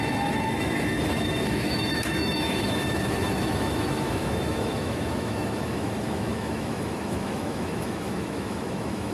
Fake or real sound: fake